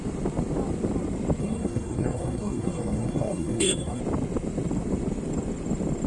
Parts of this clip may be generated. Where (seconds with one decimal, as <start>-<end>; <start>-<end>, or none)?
1.4-4.0